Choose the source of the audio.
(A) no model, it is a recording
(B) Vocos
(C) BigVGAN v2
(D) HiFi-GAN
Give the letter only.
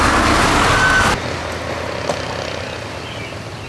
A